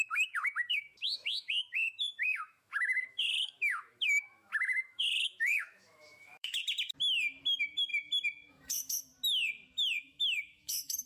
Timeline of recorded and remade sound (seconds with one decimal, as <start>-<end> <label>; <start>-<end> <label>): 0.0-6.6 remade; 6.6-7.4 recorded; 7.4-7.9 remade; 7.9-8.5 recorded; 8.5-9.1 remade; 9.1-10.0 recorded; 10.0-11.1 remade